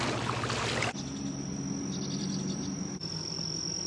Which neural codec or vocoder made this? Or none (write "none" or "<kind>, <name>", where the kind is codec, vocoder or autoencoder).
none